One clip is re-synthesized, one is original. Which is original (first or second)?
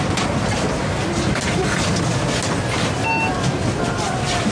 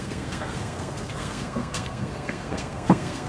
first